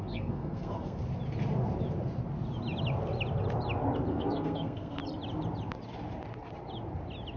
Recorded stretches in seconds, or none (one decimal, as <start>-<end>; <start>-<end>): 1.0-4.1; 5.0-7.4